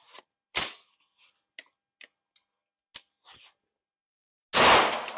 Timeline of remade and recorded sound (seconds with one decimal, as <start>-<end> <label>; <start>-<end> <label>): 0.0-5.2 recorded